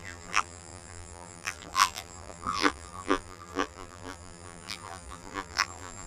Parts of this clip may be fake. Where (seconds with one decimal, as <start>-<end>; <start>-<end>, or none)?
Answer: 0.0-6.1